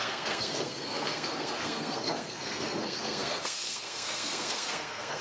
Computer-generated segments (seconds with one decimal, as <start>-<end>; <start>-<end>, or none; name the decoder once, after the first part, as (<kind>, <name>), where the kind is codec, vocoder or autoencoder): 0.0-5.2 (codec, SNAC)